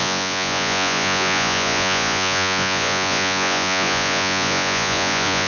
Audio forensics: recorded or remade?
remade